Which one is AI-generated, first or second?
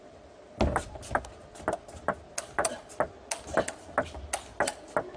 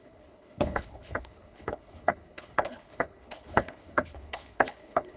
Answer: second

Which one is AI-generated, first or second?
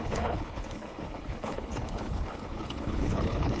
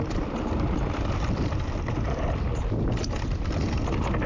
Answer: first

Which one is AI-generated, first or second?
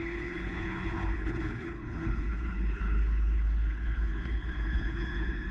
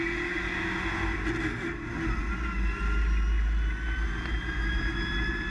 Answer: first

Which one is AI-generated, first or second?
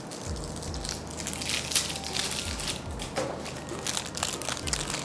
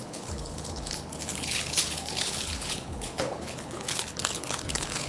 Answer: second